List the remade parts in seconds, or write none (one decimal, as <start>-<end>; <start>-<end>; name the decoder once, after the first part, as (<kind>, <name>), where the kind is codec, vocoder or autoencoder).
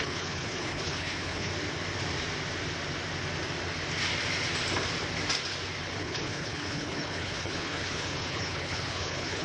0.0-1.5 (codec, HILCodec); 6.0-9.4